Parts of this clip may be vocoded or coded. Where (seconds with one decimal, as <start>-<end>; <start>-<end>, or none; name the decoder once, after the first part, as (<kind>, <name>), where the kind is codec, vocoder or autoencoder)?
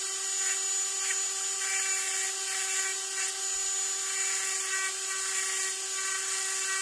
none